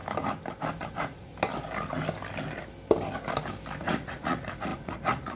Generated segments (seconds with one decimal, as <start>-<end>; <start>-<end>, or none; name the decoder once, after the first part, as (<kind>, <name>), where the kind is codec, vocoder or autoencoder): 0.8-1.3 (vocoder, Vocos); 3.8-5.4